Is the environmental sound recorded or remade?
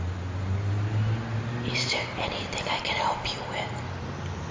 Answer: recorded